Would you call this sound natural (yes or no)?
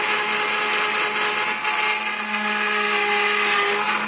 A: yes